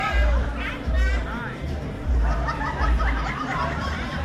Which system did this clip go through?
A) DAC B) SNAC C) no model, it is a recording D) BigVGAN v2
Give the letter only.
D